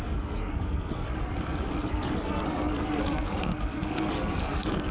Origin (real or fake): fake